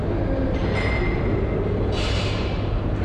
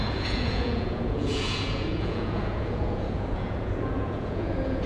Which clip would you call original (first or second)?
first